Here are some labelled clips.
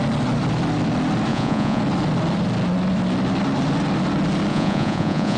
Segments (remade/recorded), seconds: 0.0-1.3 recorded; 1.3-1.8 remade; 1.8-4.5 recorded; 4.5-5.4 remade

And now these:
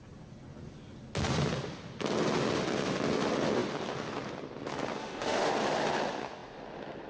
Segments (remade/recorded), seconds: 0.0-5.0 recorded; 5.0-5.5 remade; 5.5-7.1 recorded

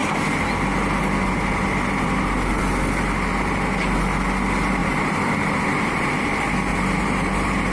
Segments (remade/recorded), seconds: 0.0-4.8 recorded; 4.8-6.1 remade; 6.1-6.7 recorded; 6.7-7.7 remade